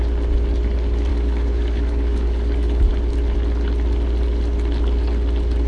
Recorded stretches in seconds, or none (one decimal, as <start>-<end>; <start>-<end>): 0.0-1.1; 2.9-5.7